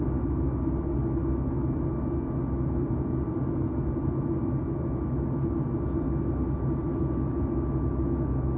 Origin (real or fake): real